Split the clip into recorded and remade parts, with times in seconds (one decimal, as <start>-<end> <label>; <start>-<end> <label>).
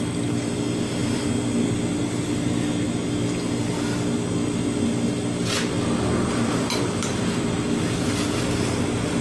0.0-9.2 recorded